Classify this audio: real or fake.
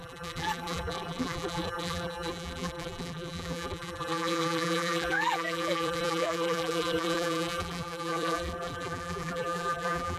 fake